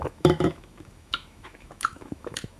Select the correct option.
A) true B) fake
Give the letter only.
B